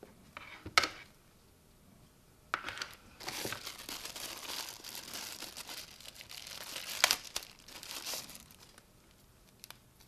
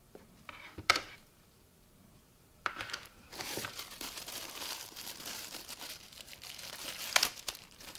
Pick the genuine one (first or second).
first